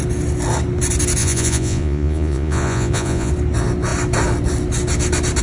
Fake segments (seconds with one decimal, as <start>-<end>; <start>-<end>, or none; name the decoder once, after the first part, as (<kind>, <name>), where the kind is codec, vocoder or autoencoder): 1.2-3.3 (vocoder, Vocos)